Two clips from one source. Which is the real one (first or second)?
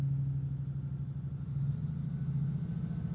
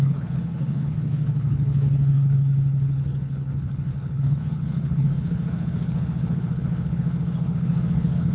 first